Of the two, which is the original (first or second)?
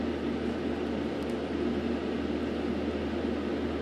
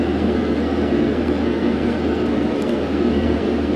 first